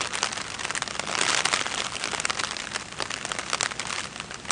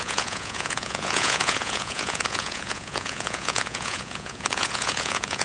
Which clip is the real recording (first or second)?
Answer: first